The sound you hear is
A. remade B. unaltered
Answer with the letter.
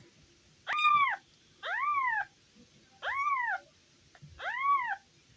B